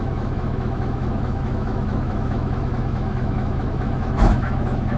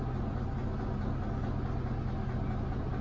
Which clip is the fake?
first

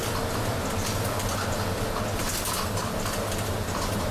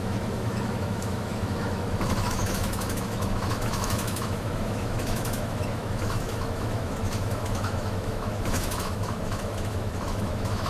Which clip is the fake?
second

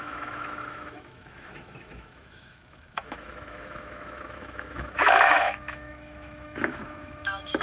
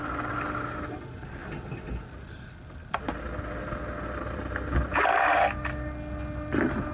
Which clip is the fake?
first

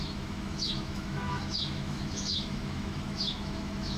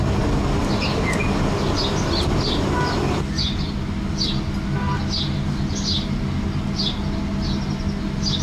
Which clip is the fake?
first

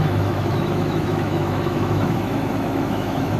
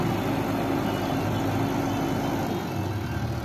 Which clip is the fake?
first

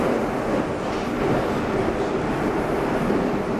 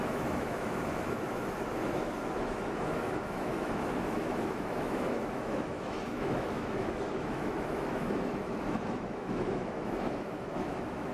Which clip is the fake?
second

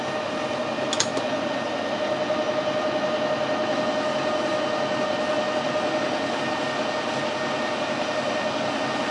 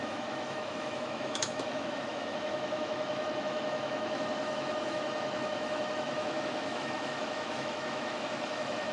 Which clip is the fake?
second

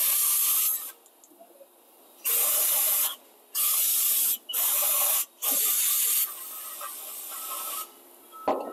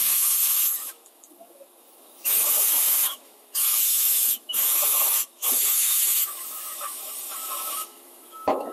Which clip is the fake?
second